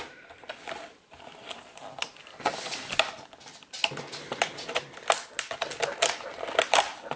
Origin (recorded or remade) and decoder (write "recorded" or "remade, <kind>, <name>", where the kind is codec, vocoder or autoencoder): recorded